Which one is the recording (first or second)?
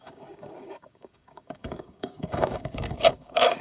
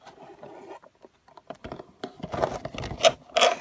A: second